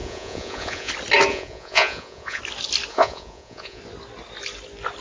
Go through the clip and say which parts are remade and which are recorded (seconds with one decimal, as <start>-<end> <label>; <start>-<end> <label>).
0.0-0.9 remade; 0.9-1.3 recorded; 1.3-2.4 remade; 2.4-2.9 recorded; 2.9-3.8 remade; 3.8-5.0 recorded